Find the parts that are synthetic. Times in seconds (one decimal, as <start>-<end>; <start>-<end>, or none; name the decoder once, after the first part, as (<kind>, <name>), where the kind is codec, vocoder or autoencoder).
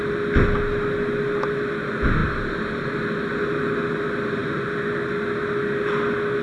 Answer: none